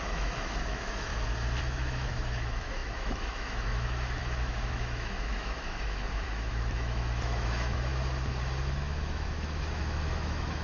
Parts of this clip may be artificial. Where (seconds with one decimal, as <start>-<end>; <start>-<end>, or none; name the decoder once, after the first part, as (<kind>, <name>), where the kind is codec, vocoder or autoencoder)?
0.0-1.1 (autoencoder, DAC-VAE); 1.6-7.9; 8.4-10.6